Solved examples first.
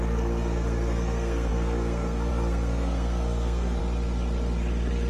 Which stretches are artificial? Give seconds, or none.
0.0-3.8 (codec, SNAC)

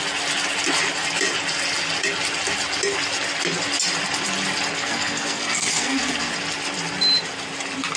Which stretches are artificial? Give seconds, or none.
4.8-6.3 (codec, SNAC)

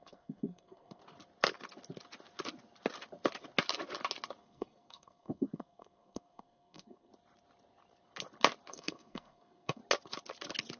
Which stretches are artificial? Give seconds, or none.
0.0-1.0 (codec, SNAC); 4.4-7.1; 8.7-9.8

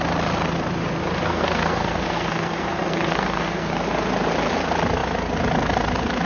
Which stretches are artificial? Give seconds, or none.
1.2-3.7 (codec, SNAC)

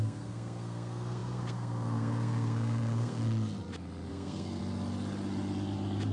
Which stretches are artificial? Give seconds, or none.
0.0-3.2 (codec, SNAC); 4.1-4.6

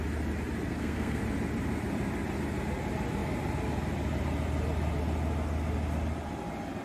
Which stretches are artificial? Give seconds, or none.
0.7-1.2 (codec, SNAC)

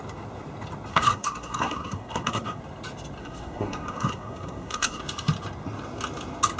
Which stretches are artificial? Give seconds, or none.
0.9-2.6 (codec, SNAC); 3.2-5.0

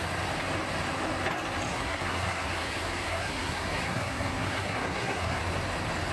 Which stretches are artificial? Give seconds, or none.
1.7-5.4 (codec, SNAC)